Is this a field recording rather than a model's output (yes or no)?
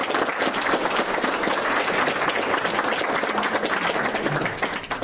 yes